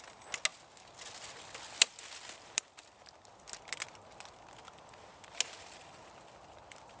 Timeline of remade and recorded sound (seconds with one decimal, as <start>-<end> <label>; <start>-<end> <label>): 0.0-7.0 recorded